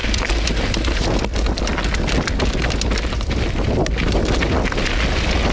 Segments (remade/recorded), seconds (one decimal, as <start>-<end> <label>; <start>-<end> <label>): 0.0-5.5 recorded